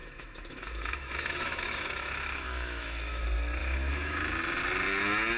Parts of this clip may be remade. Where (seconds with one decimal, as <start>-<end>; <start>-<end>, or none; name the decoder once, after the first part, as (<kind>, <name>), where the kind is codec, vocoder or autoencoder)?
0.0-3.2 (autoencoder, DAC-VAE); 3.6-4.2